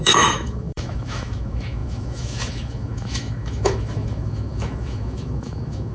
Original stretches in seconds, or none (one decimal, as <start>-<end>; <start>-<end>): none

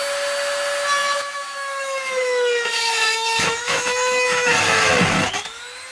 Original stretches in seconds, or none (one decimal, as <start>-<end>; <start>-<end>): 0.0-1.0; 4.5-5.9

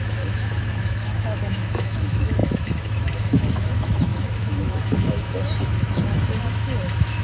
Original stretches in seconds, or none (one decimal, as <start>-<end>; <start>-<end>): none

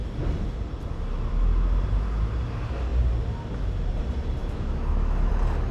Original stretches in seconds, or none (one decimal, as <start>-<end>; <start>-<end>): 0.0-4.4; 5.3-5.7

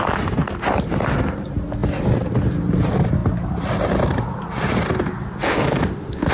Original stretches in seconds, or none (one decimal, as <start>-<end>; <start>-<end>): 0.0-5.5

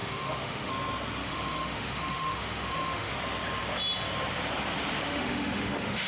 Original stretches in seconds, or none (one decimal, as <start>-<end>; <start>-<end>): 0.7-1.2; 3.1-5.1